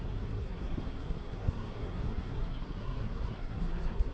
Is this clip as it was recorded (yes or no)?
no